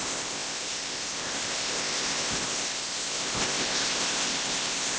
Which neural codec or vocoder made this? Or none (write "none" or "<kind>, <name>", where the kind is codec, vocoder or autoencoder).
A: codec, ZipCodec